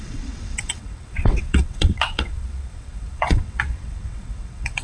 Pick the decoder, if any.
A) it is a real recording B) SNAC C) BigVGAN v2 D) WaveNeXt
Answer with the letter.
D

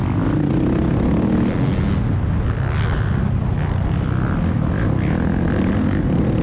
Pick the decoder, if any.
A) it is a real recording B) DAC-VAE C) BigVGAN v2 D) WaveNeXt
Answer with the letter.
A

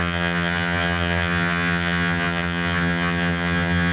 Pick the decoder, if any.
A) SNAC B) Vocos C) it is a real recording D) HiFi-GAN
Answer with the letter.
D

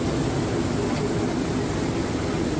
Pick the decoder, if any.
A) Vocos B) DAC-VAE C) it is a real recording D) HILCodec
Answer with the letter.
C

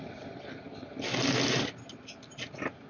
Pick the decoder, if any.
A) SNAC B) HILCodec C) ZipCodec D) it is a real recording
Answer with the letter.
D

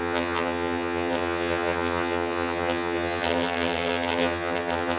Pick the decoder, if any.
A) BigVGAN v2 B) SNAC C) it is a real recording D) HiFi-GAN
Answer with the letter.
D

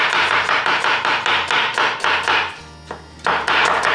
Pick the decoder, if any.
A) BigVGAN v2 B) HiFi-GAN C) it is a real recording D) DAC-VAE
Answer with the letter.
C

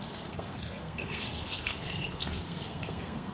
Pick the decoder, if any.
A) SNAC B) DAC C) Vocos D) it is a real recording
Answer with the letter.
A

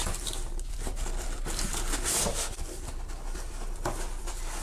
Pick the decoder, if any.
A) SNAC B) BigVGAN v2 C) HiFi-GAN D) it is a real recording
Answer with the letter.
B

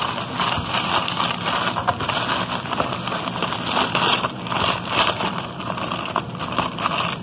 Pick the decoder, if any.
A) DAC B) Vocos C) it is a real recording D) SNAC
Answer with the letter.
C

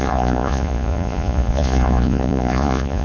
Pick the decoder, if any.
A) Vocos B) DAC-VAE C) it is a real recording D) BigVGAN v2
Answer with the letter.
A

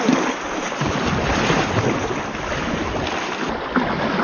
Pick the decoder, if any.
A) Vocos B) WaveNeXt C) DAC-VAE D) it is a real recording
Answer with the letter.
D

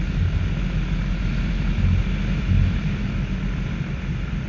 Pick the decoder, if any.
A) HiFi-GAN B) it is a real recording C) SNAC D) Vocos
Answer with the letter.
B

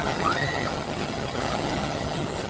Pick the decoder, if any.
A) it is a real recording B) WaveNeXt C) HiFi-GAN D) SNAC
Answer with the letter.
C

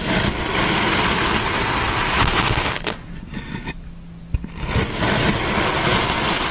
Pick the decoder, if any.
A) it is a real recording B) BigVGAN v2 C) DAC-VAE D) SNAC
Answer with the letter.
A